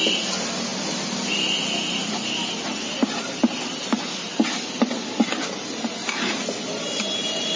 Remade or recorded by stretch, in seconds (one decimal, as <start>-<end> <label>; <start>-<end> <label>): 0.0-7.6 recorded